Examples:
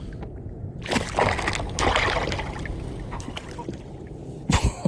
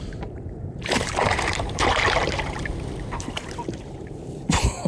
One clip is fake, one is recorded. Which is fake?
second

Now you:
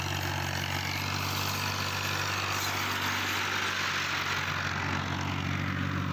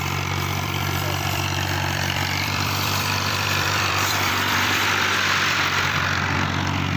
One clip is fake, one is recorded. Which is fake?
second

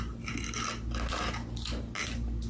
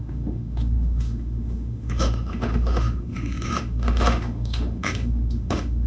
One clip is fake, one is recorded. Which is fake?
second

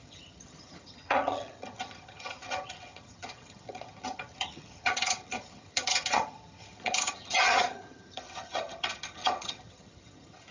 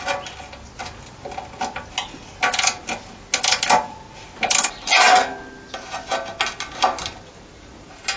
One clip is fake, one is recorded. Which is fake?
first